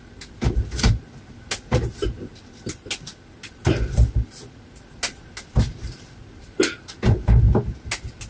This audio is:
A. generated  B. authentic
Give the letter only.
B